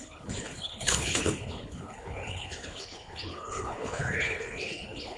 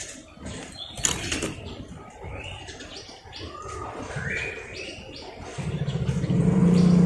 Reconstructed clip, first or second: first